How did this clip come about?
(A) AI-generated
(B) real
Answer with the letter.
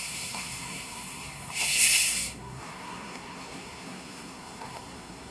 A